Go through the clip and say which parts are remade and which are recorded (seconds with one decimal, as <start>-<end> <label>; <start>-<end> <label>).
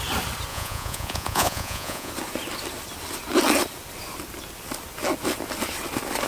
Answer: 0.0-0.5 recorded; 0.5-2.1 remade; 2.1-6.3 recorded